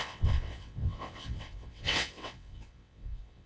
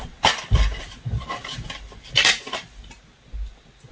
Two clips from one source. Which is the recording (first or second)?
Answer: second